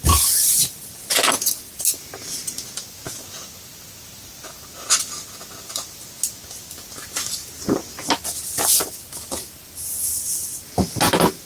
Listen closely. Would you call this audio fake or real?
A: real